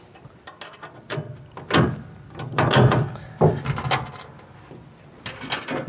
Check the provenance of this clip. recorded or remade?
recorded